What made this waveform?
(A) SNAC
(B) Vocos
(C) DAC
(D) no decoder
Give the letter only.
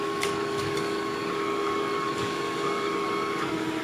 C